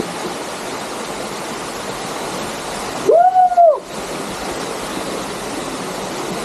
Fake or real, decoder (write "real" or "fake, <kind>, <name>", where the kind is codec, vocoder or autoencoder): real